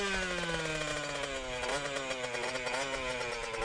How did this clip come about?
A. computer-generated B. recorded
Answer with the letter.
B